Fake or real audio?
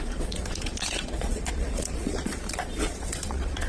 fake